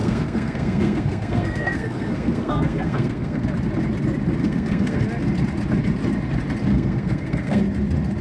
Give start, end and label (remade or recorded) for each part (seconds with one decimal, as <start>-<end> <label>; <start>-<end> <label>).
0.0-3.4 remade; 3.4-4.4 recorded; 4.4-5.0 remade; 5.0-6.7 recorded; 6.7-7.6 remade; 7.6-8.2 recorded